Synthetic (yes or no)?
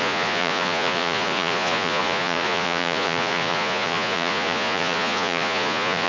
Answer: yes